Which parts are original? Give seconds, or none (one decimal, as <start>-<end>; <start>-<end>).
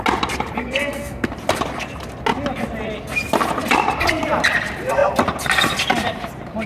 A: 0.0-0.6; 1.3-6.7